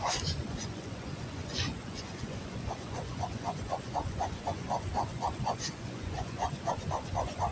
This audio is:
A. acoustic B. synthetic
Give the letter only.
B